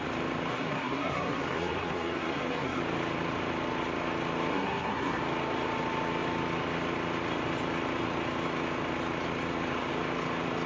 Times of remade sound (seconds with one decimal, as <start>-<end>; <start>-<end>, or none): 0.5-2.8; 4.5-5.2